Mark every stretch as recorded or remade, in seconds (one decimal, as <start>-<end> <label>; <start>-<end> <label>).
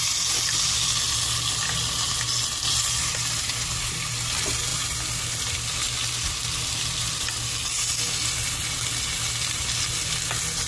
0.0-10.7 recorded